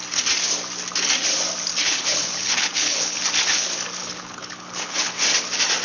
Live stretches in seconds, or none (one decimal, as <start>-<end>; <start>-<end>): 0.0-1.7; 3.2-4.0; 5.2-5.8